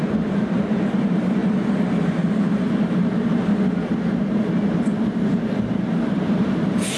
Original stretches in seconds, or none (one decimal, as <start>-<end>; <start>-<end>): 3.5-4.7